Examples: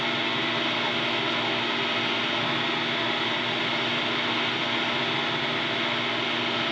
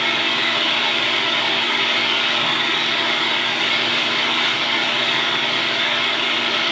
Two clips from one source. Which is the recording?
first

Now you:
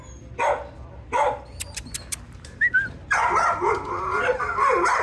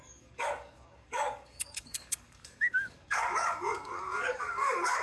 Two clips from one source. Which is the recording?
first